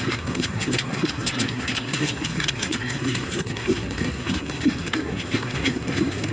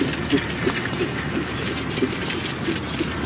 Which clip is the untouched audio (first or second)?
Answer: second